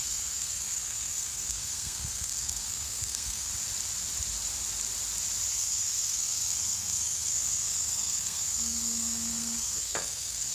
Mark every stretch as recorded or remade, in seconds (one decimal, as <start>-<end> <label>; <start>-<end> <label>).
0.0-3.5 remade; 3.5-5.5 recorded; 5.5-10.5 remade